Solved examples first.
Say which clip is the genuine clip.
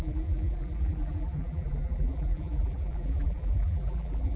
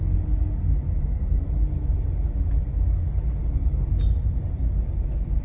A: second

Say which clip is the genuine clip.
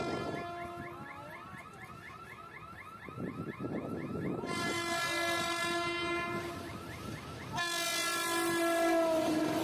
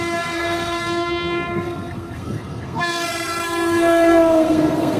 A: first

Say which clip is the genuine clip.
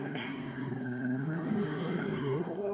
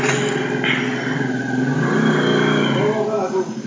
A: second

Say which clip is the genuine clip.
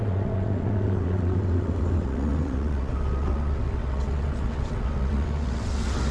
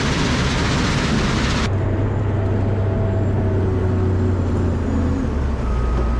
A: second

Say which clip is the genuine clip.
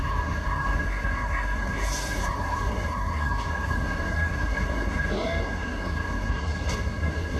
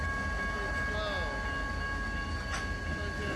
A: second